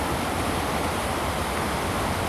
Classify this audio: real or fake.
real